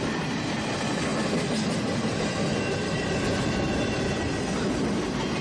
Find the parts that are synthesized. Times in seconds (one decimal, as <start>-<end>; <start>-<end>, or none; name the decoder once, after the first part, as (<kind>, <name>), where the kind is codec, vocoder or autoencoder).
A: none